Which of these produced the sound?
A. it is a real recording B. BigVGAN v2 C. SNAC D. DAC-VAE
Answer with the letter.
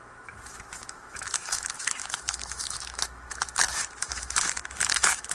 D